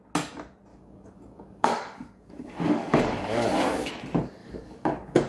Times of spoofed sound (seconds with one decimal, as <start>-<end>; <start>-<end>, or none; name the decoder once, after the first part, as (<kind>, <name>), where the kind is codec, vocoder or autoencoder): 0.7-3.9 (codec, DAC); 4.4-5.3